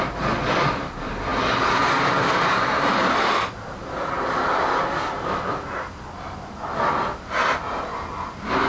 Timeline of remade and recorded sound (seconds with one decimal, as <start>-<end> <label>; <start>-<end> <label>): 0.0-8.7 recorded